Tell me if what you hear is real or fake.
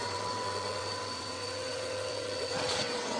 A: fake